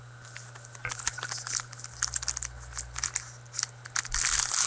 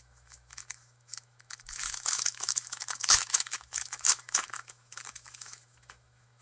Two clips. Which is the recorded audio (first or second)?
first